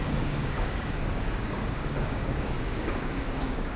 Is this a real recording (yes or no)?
no